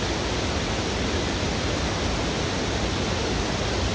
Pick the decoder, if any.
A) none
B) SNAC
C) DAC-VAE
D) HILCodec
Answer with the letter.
A